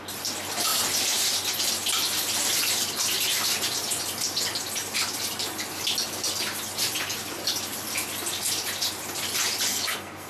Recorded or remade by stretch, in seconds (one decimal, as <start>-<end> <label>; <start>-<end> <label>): 0.0-9.7 recorded; 9.7-10.3 remade